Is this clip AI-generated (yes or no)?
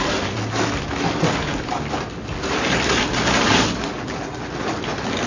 no